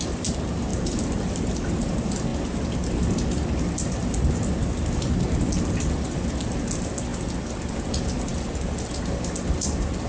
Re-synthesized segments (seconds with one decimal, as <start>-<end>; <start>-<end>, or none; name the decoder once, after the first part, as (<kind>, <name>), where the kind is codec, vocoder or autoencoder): 0.7-1.5 (vocoder, BigVGAN v2)